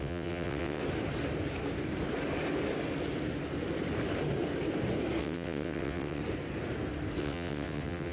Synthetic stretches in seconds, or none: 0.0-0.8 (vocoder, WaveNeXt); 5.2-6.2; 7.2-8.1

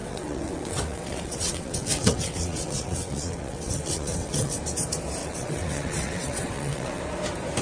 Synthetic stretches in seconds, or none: 0.0-4.6 (vocoder, WaveNeXt); 5.2-7.0

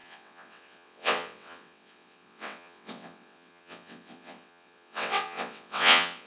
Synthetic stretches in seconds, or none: 0.0-6.3 (vocoder, WaveNeXt)

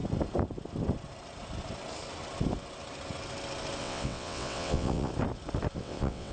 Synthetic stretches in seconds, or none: 3.8-5.1 (vocoder, WaveNeXt); 5.8-6.3

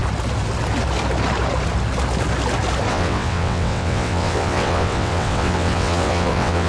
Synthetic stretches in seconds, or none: 2.9-6.7 (vocoder, WaveNeXt)